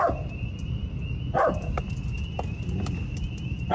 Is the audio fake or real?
real